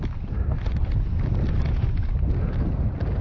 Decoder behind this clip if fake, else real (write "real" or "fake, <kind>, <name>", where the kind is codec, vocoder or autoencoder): real